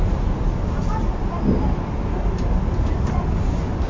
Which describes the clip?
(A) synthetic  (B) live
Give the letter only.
B